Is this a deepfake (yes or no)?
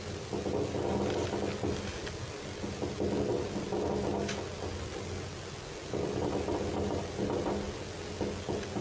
no